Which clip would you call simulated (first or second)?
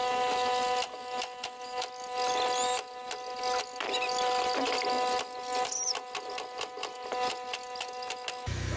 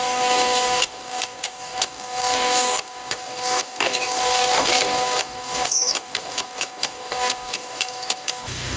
second